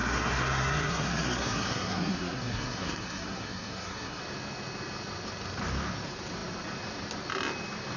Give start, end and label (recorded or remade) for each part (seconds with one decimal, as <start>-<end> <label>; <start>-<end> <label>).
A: 0.0-4.2 remade; 4.2-8.0 recorded